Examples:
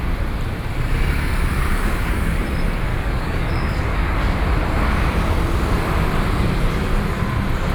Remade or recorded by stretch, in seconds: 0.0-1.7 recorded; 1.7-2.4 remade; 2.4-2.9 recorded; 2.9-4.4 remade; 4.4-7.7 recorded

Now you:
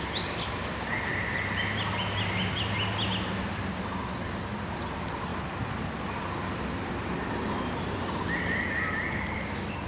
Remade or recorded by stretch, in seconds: 0.0-9.9 recorded

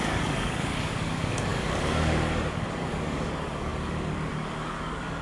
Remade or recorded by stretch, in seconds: 0.0-5.2 remade

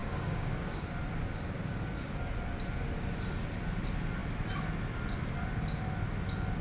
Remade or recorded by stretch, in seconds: 0.0-0.9 remade; 0.9-6.6 recorded

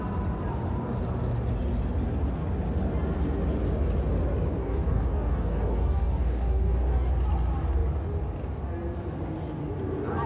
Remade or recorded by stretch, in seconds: 0.0-4.6 recorded; 4.6-7.1 remade; 7.1-10.3 recorded